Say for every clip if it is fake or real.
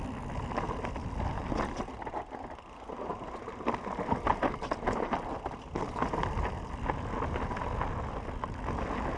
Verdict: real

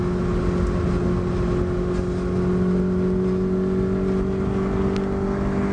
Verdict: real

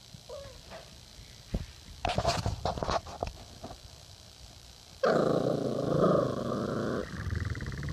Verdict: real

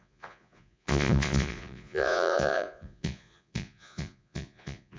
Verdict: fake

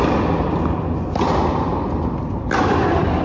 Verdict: real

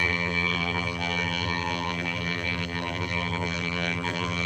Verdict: fake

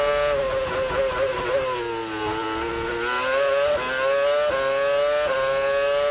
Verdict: real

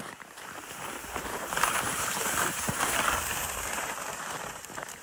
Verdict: fake